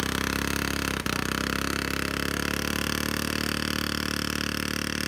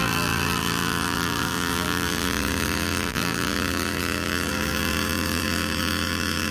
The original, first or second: first